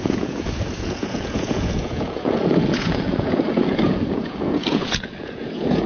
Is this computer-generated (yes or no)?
yes